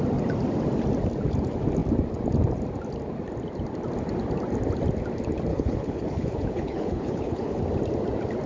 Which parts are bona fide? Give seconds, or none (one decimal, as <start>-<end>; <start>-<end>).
0.0-5.5; 7.6-8.5